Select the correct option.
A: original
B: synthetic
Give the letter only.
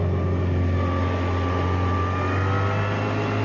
A